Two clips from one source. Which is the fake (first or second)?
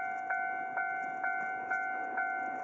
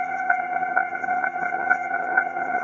second